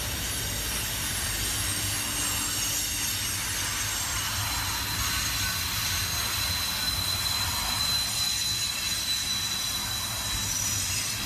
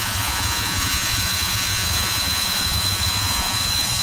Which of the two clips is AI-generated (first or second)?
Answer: second